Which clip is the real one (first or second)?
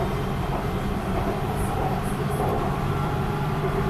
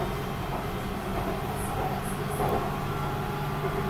second